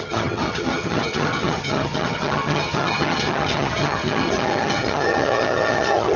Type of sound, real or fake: fake